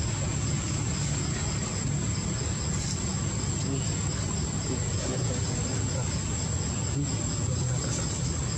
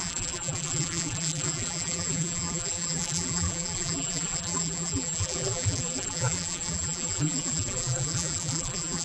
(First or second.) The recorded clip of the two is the first